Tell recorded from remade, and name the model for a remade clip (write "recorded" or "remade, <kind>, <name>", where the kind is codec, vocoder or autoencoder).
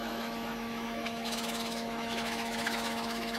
remade, autoencoder, DAC-VAE